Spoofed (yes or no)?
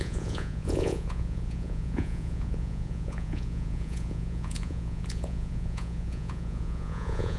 yes